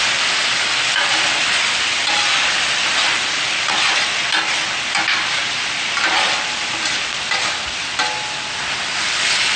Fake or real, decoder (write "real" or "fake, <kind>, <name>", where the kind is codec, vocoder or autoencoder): real